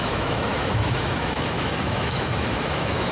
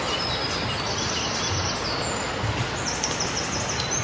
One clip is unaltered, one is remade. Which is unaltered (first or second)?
second